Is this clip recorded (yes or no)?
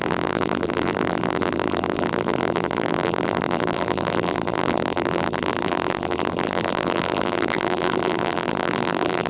no